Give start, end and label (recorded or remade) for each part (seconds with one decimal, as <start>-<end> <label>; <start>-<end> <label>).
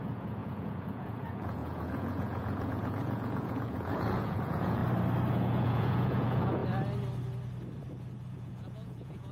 0.0-4.8 remade; 4.8-5.3 recorded; 5.3-6.6 remade; 6.6-8.3 recorded; 8.3-9.3 remade